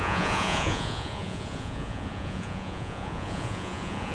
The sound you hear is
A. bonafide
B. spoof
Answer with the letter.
B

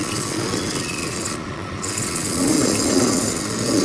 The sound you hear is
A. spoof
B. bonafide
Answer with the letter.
A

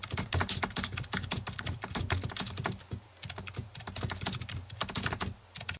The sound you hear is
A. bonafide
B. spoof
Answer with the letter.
A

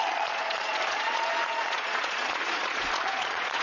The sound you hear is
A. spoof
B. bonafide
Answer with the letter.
A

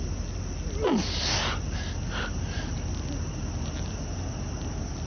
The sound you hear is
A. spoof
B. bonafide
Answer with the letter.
B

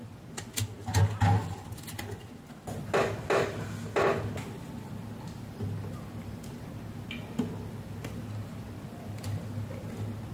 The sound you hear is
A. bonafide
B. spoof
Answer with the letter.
A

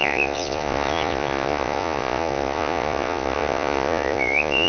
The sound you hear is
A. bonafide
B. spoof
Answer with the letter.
B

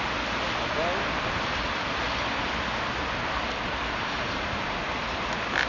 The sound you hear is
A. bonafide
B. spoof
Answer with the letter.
A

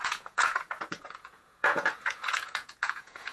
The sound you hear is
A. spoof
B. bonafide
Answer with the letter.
A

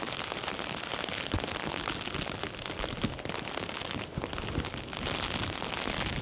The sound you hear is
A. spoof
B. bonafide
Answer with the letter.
B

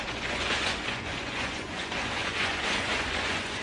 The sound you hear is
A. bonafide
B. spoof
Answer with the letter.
B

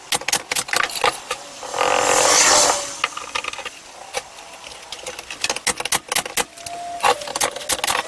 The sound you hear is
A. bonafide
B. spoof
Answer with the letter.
A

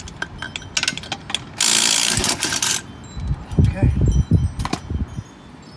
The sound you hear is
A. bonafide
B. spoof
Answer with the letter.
A